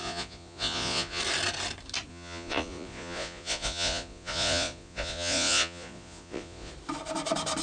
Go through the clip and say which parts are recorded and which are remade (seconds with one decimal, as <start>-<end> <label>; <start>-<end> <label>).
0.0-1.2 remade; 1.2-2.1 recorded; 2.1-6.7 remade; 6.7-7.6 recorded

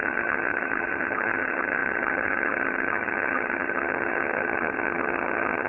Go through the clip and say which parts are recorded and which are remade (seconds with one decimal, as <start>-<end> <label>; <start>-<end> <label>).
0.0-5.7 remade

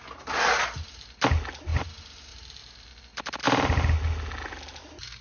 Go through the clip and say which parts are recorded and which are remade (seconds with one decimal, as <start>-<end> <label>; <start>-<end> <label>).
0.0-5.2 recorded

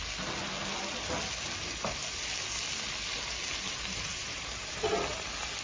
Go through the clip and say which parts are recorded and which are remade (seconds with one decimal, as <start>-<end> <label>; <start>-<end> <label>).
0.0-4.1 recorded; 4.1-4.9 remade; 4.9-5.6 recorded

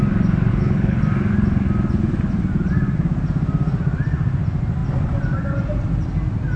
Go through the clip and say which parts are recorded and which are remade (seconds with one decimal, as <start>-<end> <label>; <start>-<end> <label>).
0.0-0.5 recorded; 0.5-1.0 remade; 1.0-6.6 recorded